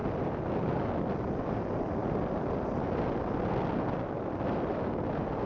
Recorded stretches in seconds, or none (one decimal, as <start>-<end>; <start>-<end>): 0.0-5.5

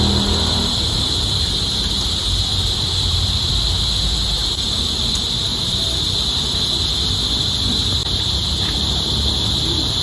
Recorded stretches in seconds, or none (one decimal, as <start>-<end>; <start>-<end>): 0.0-2.5; 3.5-4.4; 5.8-10.0

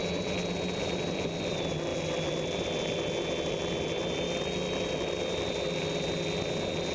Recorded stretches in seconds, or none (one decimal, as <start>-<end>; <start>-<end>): 0.0-6.9

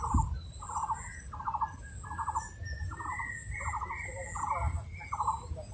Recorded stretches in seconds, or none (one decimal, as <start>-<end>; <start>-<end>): 0.0-5.7